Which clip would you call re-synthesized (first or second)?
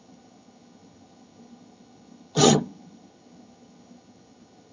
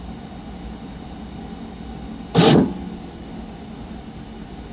first